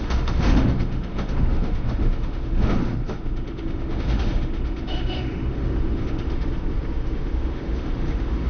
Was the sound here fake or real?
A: fake